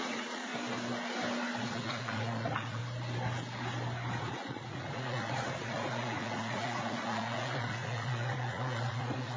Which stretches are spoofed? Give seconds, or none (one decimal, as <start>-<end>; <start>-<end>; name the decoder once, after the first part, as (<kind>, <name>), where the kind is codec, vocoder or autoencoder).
0.0-0.5 (vocoder, Vocos); 1.6-2.8; 4.2-9.4